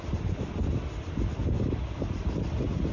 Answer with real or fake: real